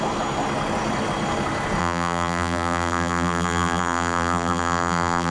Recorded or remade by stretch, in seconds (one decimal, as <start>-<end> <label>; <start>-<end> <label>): 0.0-1.8 recorded; 1.8-5.3 remade